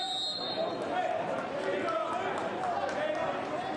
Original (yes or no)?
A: yes